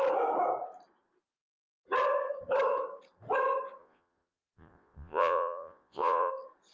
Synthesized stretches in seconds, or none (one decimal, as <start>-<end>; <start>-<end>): 3.8-6.3